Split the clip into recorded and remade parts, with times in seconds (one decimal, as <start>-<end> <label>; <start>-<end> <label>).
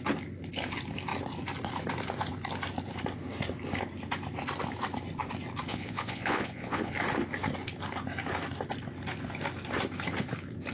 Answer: 0.0-5.7 recorded; 5.7-6.9 remade; 6.9-10.7 recorded